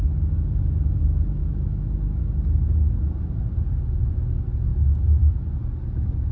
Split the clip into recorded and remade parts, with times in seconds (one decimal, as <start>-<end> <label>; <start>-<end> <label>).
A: 0.0-1.4 recorded; 1.4-2.2 remade; 2.2-6.3 recorded